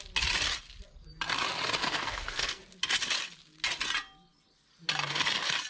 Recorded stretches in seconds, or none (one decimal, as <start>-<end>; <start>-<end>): 0.0-1.8; 2.6-5.7